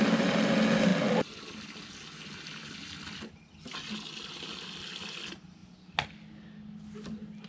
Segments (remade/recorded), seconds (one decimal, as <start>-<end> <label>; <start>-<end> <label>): 0.0-7.5 recorded